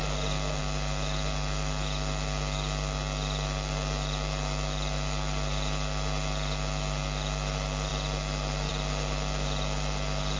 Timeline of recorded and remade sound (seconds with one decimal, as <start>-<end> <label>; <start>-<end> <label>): 0.0-10.4 recorded